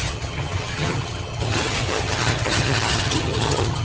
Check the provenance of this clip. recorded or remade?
remade